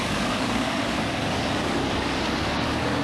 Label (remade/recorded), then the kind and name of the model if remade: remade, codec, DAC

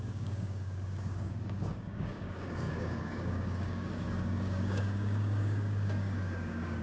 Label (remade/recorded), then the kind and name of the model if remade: remade, codec, DAC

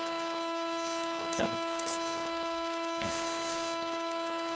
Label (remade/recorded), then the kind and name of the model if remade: remade, codec, DAC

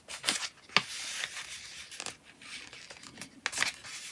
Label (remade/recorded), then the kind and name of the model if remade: recorded